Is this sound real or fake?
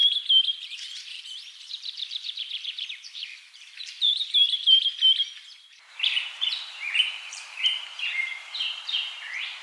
fake